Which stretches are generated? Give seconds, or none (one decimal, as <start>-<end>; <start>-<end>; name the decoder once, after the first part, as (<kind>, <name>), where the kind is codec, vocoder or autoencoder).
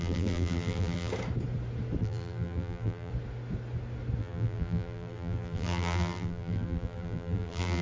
0.0-1.1 (vocoder, BigVGAN v2); 2.0-3.1; 4.2-7.8